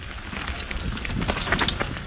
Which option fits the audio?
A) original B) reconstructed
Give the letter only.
A